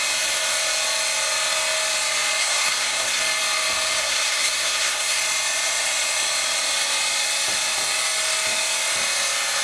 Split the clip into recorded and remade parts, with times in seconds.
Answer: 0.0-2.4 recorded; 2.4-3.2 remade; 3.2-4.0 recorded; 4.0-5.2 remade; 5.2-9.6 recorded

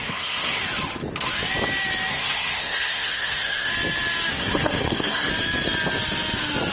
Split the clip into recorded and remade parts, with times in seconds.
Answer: 0.0-0.6 remade; 0.6-2.1 recorded; 2.1-3.7 remade; 3.7-4.3 recorded; 4.3-5.3 remade; 5.3-6.7 recorded

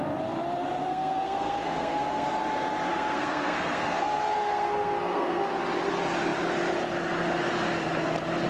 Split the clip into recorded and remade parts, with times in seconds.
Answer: 0.0-0.9 recorded; 0.9-2.4 remade; 2.4-2.9 recorded; 2.9-5.5 remade; 5.5-8.5 recorded

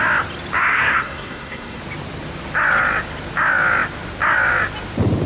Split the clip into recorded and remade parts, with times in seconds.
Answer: 0.0-0.6 recorded; 0.6-1.8 remade; 1.8-5.3 recorded

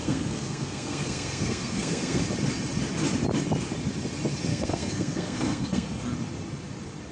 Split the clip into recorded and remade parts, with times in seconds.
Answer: 0.0-2.2 remade; 2.2-4.5 recorded; 4.5-6.0 remade; 6.0-7.1 recorded